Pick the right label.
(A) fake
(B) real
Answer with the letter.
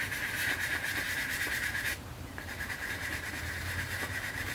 A